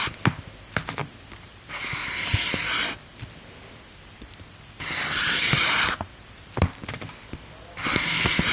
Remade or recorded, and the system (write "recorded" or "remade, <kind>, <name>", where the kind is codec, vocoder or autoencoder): remade, vocoder, BigVGAN v2